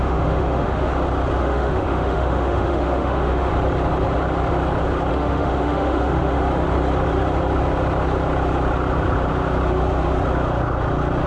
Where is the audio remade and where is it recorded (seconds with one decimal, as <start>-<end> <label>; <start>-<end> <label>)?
0.0-0.9 remade; 0.9-1.4 recorded; 1.4-3.5 remade; 3.5-5.1 recorded; 5.1-6.4 remade; 6.4-11.3 recorded

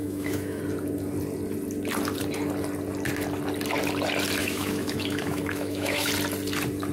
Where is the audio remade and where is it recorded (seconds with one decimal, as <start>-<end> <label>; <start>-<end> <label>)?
0.0-0.6 remade; 0.6-4.4 recorded; 4.4-6.1 remade; 6.1-6.9 recorded

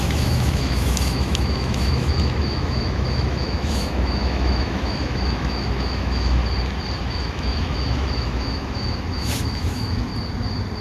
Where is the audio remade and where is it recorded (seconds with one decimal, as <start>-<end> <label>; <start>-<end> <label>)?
0.0-6.4 remade; 6.4-7.0 recorded; 7.0-10.1 remade; 10.1-10.8 recorded

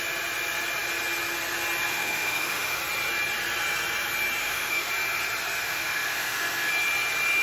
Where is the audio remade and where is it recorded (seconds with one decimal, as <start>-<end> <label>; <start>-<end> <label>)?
0.0-1.9 recorded; 1.9-2.8 remade; 2.8-4.4 recorded; 4.4-4.9 remade; 4.9-5.6 recorded; 5.6-6.7 remade; 6.7-7.4 recorded

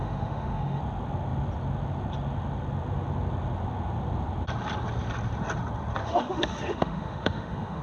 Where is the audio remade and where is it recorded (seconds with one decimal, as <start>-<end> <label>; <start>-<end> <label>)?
0.0-0.8 remade; 0.8-6.0 recorded; 6.0-7.8 remade